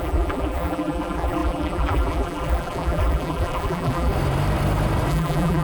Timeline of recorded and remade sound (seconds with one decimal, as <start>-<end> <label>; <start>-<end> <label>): 0.0-4.1 remade; 4.1-5.1 recorded; 5.1-5.6 remade